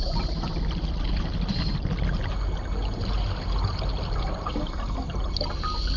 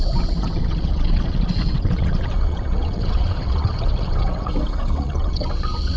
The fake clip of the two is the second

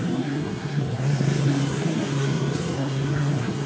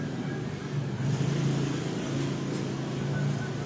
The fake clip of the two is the first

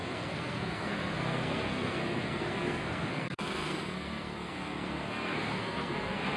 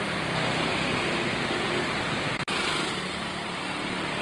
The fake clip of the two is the first